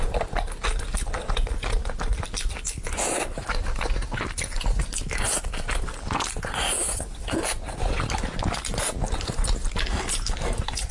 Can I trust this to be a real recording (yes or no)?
yes